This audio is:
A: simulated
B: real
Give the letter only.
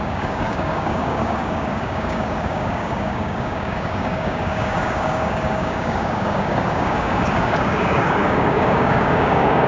A